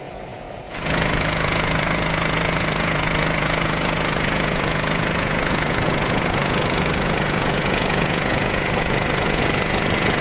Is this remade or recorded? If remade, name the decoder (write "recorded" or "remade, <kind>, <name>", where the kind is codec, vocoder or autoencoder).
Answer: remade, vocoder, Vocos